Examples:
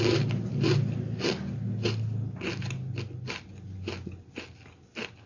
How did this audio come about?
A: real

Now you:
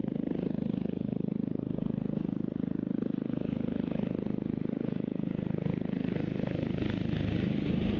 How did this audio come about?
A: real